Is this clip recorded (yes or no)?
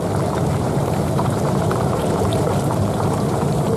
no